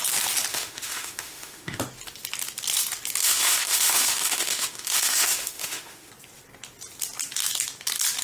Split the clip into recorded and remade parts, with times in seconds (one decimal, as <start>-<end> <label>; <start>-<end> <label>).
0.0-0.5 recorded; 0.5-1.8 remade; 1.8-3.2 recorded; 3.2-6.1 remade; 6.1-8.2 recorded